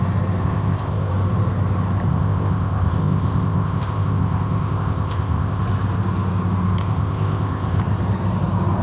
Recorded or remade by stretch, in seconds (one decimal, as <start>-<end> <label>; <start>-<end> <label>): 0.0-0.4 recorded; 0.4-1.1 remade; 1.1-2.1 recorded; 2.1-5.6 remade; 5.6-6.8 recorded; 6.8-7.8 remade; 7.8-8.8 recorded